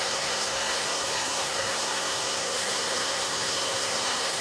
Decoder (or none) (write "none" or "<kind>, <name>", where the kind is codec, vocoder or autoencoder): codec, SNAC